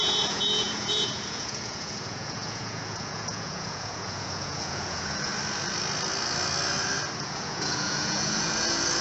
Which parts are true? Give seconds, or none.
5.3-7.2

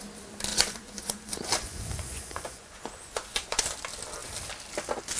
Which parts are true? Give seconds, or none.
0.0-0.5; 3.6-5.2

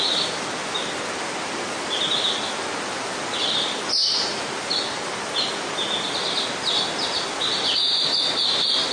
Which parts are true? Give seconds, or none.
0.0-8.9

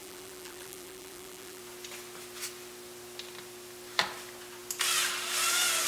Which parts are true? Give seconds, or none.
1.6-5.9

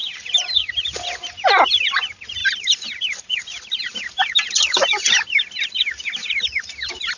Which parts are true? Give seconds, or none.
0.0-7.2